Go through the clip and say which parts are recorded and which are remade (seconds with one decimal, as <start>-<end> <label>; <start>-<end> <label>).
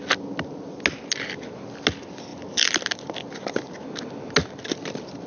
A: 0.0-5.3 recorded